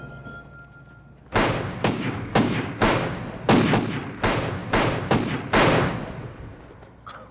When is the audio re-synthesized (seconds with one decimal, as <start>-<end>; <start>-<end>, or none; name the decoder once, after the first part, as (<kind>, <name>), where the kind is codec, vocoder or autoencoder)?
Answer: 1.8-3.1 (codec, DAC)